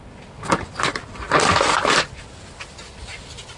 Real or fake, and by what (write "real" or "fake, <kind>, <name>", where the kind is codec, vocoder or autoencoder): real